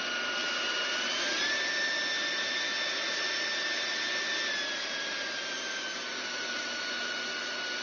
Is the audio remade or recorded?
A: recorded